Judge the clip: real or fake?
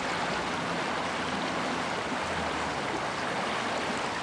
real